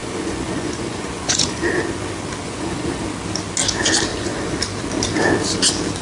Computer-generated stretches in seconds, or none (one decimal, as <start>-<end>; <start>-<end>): 0.0-1.8; 2.4-3.0; 4.1-4.6